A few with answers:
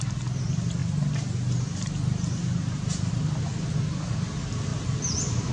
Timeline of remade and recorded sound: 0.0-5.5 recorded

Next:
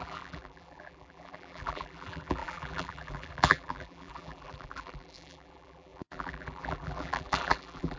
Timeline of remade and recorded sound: 0.0-8.0 remade

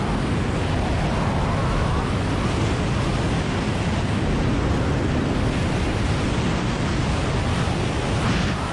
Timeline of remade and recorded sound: 0.0-1.6 recorded; 1.6-2.3 remade; 2.3-8.7 recorded

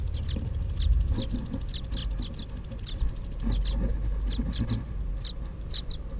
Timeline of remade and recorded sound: 0.0-6.2 recorded

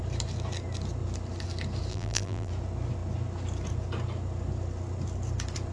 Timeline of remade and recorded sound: 0.0-1.9 recorded; 1.9-2.5 remade; 2.5-5.7 recorded